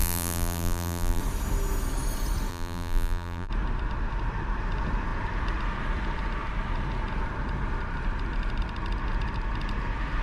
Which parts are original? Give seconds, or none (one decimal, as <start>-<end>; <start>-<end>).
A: 1.2-2.5; 3.5-10.2